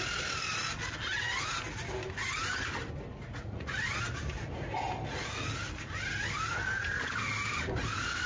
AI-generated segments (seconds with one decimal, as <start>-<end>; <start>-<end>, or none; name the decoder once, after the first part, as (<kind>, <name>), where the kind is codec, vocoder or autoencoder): 3.1-3.8 (vocoder, Vocos)